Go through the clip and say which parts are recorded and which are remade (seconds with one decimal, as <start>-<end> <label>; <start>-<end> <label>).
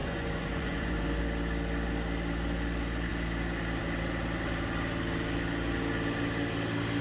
0.0-1.2 remade; 1.2-7.0 recorded